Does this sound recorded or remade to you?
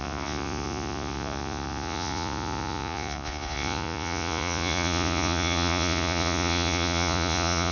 remade